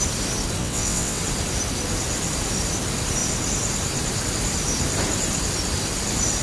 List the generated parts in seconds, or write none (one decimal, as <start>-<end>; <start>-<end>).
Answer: 0.6-1.2

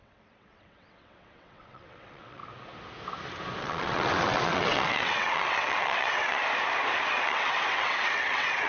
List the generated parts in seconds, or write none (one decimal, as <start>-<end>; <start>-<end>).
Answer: 0.0-2.4; 3.6-6.4; 7.1-8.7